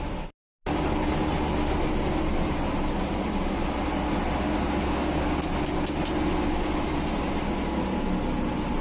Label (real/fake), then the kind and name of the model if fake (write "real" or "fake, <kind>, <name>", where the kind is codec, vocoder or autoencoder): real